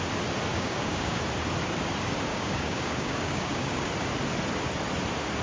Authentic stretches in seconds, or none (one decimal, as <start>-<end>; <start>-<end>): 0.0-0.5; 1.2-2.3; 3.9-5.4

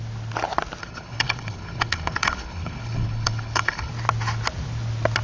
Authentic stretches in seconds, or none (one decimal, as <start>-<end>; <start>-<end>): 0.0-0.8; 3.9-5.2

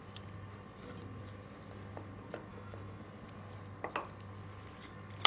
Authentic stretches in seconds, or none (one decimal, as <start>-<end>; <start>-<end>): 0.0-2.5; 3.0-5.3

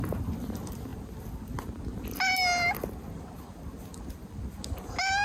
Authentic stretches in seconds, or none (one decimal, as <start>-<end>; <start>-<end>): 0.0-5.2

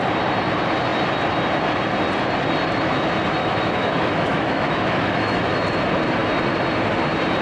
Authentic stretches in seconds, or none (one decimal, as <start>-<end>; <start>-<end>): 0.0-3.4; 5.5-7.4

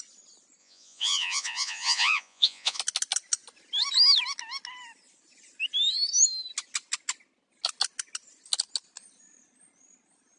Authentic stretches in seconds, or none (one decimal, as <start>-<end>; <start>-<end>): 0.0-0.6; 2.8-10.4